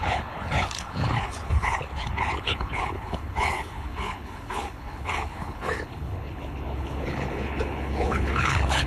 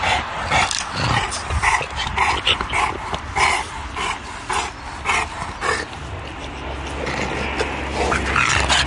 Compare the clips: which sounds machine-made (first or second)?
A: first